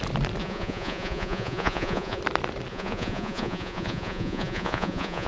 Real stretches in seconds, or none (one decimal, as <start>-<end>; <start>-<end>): 0.0-0.4; 2.2-2.7